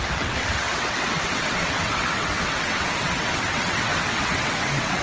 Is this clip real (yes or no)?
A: no